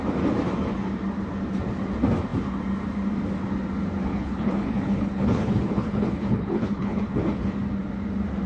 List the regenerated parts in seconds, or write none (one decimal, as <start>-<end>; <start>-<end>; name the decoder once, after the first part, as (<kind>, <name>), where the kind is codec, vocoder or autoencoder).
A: 4.1-7.0 (codec, HILCodec)